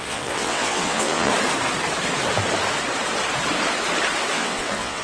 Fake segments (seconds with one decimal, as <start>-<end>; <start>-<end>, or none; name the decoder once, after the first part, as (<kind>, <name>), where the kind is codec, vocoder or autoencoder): 0.0-1.3 (vocoder, WaveNeXt); 4.3-5.0